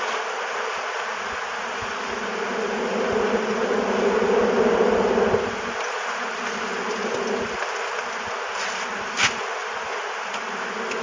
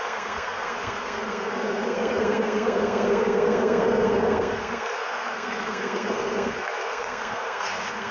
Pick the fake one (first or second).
second